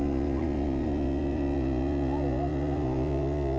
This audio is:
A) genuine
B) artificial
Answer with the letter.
B